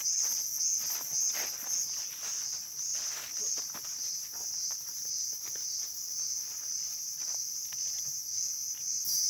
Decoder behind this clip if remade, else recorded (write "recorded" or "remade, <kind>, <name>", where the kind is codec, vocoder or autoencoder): recorded